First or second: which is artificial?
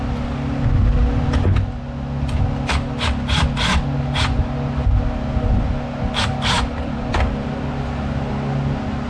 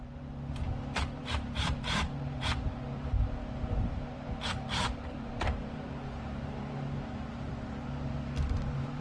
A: second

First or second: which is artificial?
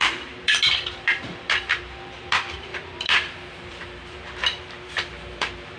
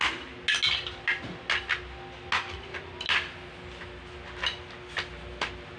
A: first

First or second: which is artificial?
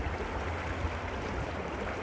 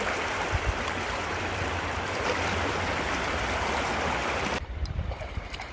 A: second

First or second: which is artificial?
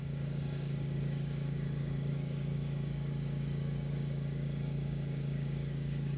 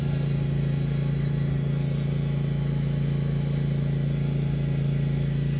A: first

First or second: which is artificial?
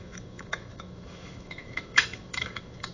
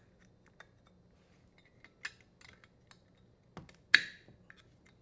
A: first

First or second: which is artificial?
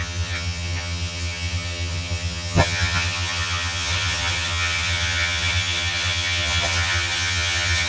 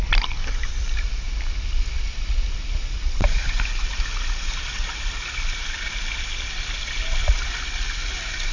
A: first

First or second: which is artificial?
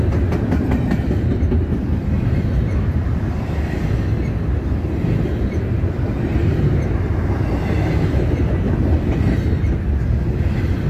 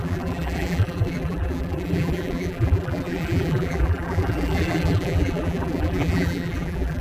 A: second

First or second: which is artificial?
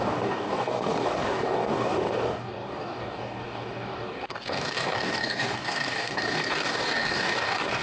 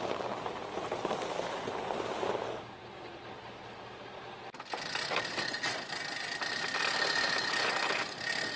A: first